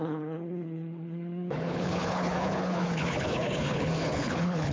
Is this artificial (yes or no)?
yes